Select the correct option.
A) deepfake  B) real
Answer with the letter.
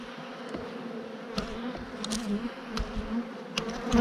B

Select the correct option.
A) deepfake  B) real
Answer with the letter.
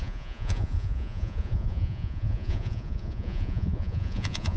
A